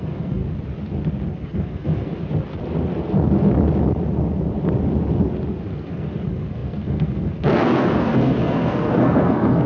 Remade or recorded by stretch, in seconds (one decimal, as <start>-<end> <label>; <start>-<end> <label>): 0.0-0.4 remade; 0.4-1.3 recorded; 1.3-2.1 remade; 2.1-5.6 recorded; 5.6-9.7 remade